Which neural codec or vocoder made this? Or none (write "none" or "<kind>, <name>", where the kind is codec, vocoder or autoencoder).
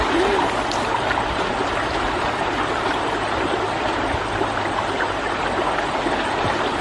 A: vocoder, BigVGAN v2